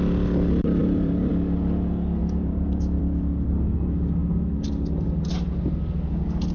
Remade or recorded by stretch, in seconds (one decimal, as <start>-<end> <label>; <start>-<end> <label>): 0.0-0.8 recorded; 0.8-1.3 remade; 1.3-2.2 recorded; 2.2-3.0 remade; 3.0-6.5 recorded